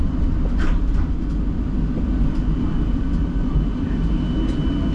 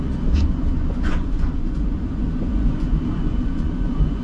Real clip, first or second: first